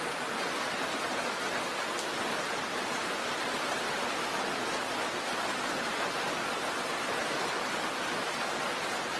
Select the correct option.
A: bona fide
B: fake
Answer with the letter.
A